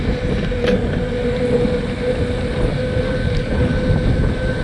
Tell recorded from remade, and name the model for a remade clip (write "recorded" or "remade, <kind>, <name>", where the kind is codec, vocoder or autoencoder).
recorded